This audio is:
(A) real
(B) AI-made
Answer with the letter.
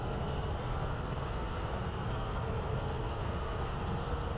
B